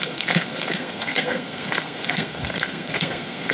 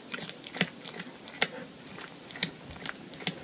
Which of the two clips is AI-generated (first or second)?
first